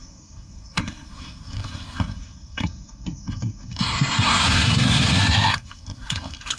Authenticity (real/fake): fake